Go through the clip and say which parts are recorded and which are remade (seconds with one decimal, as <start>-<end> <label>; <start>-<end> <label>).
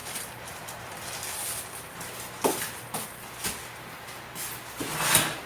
0.0-5.5 recorded